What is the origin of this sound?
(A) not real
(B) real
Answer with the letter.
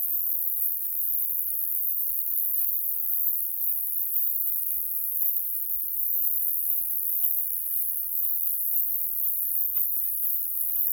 A